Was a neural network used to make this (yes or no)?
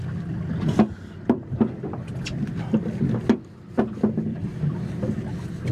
no